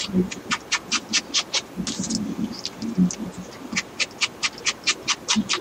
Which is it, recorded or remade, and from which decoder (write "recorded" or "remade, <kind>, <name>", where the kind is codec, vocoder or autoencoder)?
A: recorded